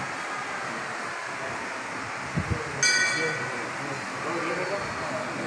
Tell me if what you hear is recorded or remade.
recorded